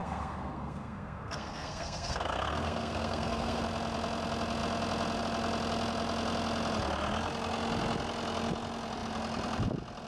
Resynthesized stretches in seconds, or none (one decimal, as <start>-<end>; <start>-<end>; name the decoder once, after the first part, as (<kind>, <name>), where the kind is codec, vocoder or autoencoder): 0.0-3.6 (codec, SNAC)